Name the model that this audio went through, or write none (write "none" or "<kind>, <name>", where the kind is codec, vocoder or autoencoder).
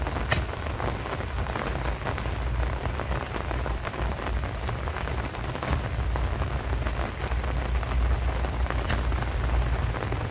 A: none